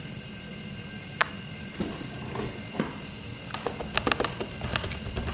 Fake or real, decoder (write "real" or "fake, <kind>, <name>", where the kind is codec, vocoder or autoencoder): real